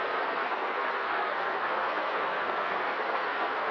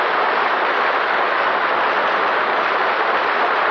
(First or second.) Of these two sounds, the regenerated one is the first